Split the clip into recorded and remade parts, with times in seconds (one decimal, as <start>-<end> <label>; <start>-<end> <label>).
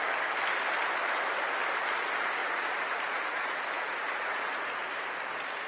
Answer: 0.0-2.4 recorded; 2.4-4.6 remade; 4.6-5.7 recorded